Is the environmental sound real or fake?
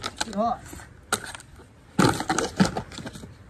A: real